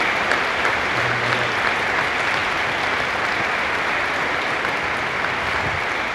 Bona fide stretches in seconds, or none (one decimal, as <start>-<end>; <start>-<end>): 0.0-6.1

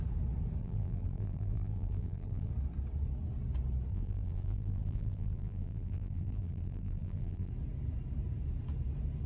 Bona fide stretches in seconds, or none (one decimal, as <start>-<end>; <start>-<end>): 0.0-0.6; 2.5-3.9; 7.5-9.3

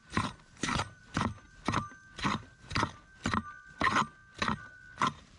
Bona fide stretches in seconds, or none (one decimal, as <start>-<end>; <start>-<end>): 1.0-5.4

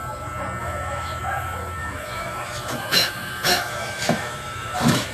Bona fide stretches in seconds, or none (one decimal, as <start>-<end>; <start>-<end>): 0.0-0.6; 1.2-1.8

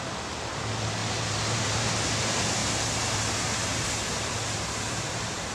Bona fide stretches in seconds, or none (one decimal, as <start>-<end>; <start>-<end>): 0.0-1.0; 1.9-2.6; 3.2-3.7

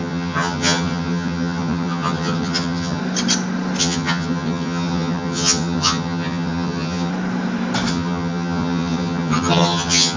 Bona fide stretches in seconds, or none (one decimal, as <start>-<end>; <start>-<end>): 3.0-3.8; 7.1-7.9